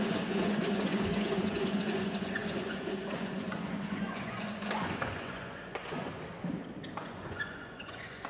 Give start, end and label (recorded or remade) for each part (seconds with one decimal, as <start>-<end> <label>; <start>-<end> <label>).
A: 0.0-6.1 remade; 6.1-7.0 recorded; 7.0-8.3 remade